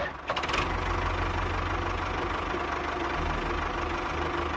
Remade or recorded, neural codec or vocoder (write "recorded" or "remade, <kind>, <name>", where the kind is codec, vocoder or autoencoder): recorded